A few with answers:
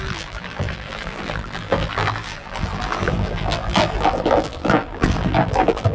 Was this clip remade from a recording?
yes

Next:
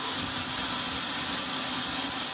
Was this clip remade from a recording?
no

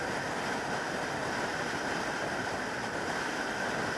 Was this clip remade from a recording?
no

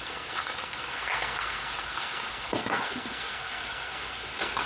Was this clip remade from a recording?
yes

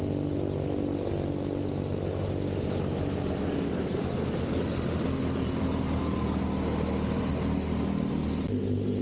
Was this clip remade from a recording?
no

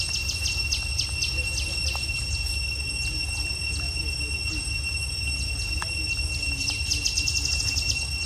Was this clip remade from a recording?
no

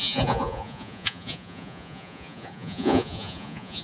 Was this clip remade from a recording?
yes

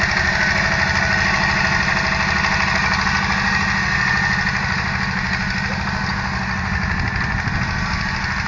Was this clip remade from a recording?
no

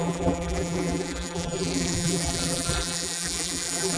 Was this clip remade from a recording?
yes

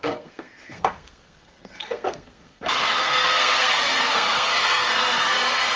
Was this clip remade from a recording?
yes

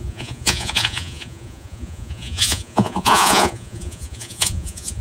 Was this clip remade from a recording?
yes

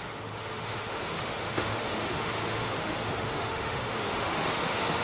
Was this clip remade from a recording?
yes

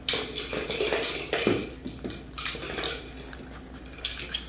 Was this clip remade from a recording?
no